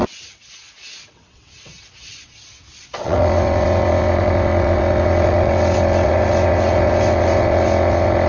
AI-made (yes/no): yes